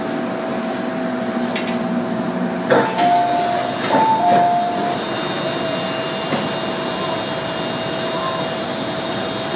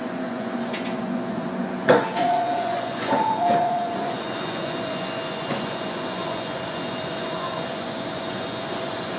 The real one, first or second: first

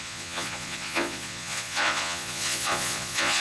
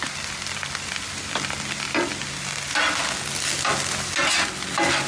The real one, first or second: second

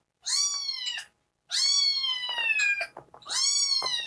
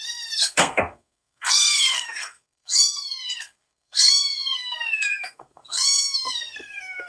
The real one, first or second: first